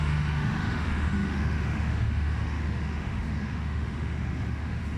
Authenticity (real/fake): fake